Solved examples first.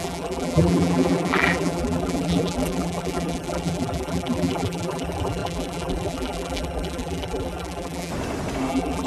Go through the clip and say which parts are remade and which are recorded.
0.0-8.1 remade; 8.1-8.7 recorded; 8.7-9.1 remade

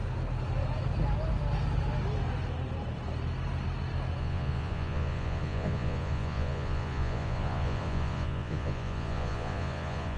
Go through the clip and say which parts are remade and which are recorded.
0.0-4.2 recorded; 4.2-10.2 remade